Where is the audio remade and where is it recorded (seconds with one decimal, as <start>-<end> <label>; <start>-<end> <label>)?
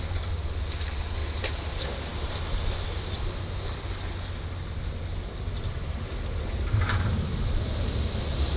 0.0-8.6 recorded